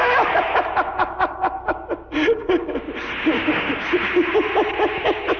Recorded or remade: recorded